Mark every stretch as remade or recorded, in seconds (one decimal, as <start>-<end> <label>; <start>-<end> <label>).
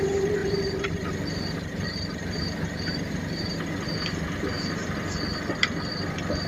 0.0-0.4 recorded; 0.4-3.7 remade; 3.7-6.5 recorded